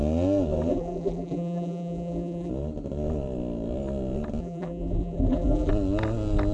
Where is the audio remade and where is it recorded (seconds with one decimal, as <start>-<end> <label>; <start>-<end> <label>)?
0.0-0.7 recorded; 0.7-2.5 remade; 2.5-4.4 recorded; 4.4-5.7 remade; 5.7-6.5 recorded